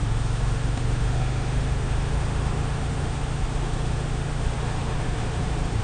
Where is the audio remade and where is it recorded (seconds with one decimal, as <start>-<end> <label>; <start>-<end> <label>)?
0.0-5.8 remade